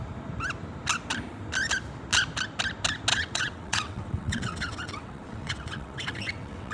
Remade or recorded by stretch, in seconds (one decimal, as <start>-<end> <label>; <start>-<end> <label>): 0.0-3.1 recorded; 3.1-6.7 remade